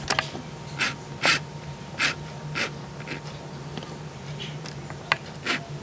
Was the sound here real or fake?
real